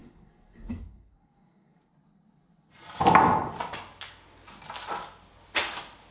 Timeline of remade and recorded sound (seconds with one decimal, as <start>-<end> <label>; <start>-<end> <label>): 0.0-1.8 remade; 1.8-6.1 recorded